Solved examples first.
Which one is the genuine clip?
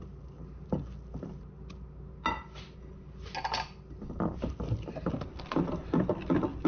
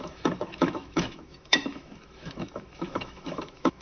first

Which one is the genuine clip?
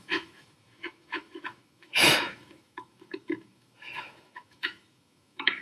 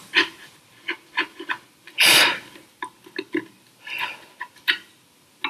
second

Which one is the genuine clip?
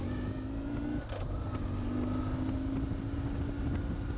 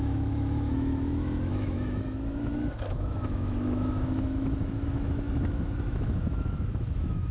first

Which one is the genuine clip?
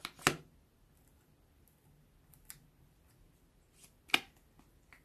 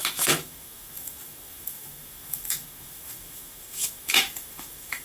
first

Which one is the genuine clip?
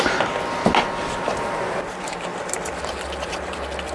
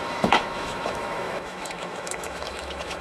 first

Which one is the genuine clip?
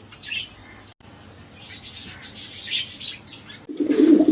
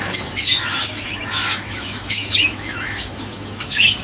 first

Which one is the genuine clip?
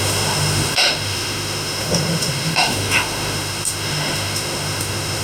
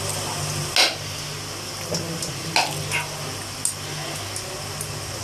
second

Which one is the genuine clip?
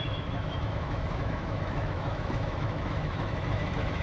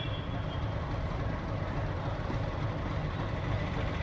second